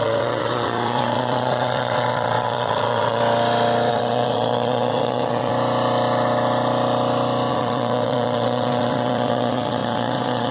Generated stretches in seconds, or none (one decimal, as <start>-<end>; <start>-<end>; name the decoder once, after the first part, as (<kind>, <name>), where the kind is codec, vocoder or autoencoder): 0.0-3.2 (vocoder, WaveNeXt); 3.9-5.5; 7.5-10.5